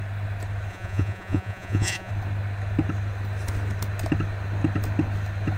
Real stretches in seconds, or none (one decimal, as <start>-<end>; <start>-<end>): 0.0-0.7; 2.1-5.6